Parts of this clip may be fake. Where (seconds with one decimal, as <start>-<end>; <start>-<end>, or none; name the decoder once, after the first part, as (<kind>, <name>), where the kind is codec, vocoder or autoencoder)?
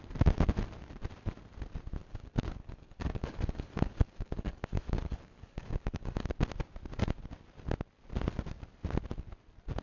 2.0-6.3 (codec, DAC)